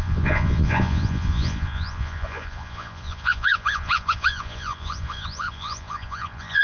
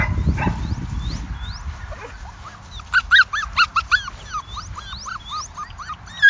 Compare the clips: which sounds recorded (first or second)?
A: second